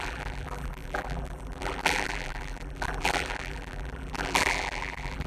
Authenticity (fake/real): fake